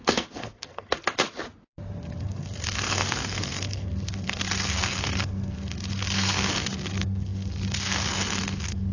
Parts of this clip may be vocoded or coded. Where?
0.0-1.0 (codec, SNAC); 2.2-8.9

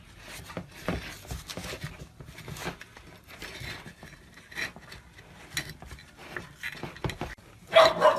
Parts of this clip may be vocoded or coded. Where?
none

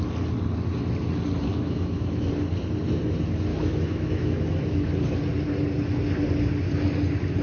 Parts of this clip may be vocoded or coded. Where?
1.5-2.3 (autoencoder, DAC-VAE); 3.5-4.9

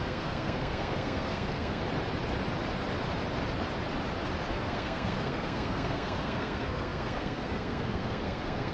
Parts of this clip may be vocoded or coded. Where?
0.0-1.8 (codec, SNAC); 4.5-8.7

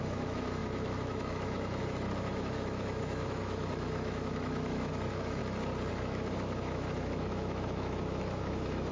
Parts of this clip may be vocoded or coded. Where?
0.0-5.4 (autoencoder, DAC-VAE); 5.9-8.9

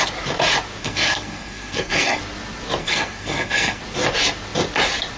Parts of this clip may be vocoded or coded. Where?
0.8-2.2 (codec, SNAC); 2.8-3.8

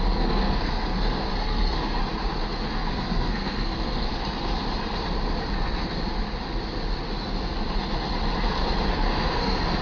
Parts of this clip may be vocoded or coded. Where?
0.0-2.0 (codec, SNAC); 2.7-4.1; 8.9-9.8